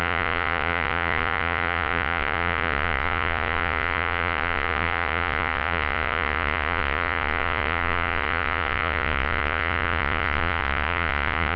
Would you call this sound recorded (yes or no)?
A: no